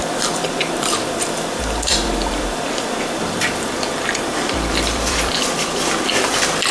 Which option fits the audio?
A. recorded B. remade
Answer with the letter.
B